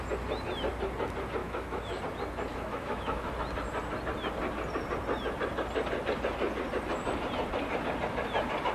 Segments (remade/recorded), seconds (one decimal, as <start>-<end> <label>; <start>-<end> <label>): 0.0-1.4 recorded; 1.4-2.0 remade; 2.0-2.5 recorded; 2.5-3.3 remade; 3.3-8.7 recorded